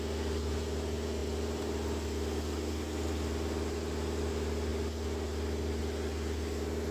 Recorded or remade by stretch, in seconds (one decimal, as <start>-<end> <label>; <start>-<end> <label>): 0.0-6.9 recorded